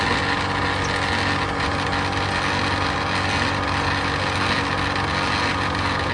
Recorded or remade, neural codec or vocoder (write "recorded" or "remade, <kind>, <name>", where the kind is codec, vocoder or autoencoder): recorded